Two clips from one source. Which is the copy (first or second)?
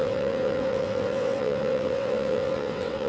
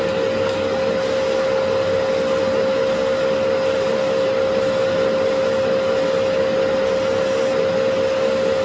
first